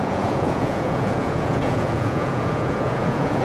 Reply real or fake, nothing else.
fake